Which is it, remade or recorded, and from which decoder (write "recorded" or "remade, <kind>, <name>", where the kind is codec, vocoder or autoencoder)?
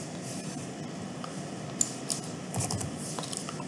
recorded